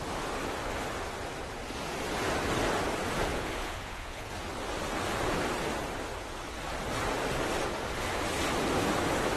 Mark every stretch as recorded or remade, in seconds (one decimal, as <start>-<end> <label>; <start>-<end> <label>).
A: 0.0-3.3 recorded; 3.3-4.3 remade; 4.3-9.4 recorded